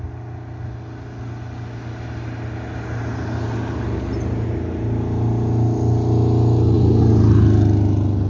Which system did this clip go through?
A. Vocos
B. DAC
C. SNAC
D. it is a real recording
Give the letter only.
D